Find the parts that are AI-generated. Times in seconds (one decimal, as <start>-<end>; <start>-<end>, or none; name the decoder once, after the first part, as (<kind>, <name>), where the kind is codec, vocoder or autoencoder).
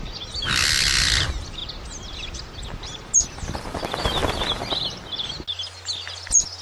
none